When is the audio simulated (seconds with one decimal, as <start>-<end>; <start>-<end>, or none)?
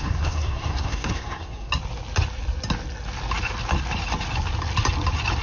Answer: 0.0-1.7